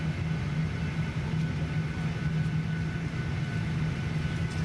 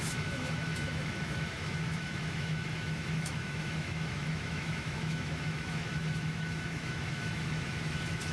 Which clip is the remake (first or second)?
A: second